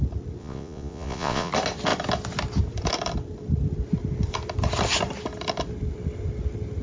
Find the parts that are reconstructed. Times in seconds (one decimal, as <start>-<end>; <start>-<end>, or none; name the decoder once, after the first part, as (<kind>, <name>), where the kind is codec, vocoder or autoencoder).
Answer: 0.4-1.5 (vocoder, Vocos)